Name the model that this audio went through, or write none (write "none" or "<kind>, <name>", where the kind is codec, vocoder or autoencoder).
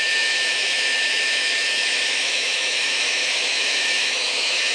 autoencoder, DAC-VAE